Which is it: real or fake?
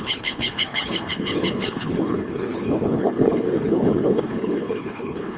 fake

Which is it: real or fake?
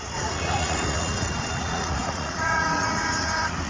fake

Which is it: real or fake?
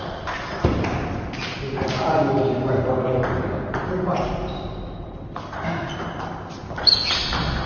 real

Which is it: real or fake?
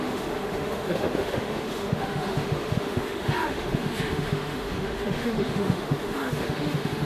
fake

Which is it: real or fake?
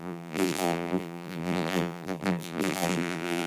fake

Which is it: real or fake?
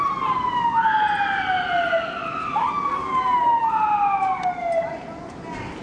real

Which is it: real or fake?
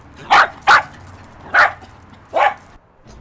real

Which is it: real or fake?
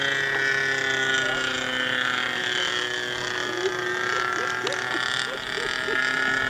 real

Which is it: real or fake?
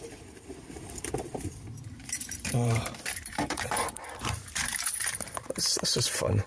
fake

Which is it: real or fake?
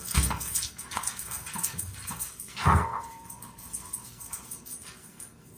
fake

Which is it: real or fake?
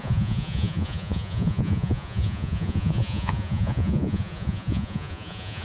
fake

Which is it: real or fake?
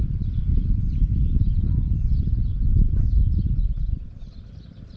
real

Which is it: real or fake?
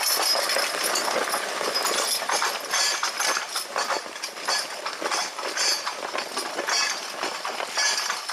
real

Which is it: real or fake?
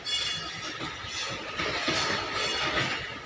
real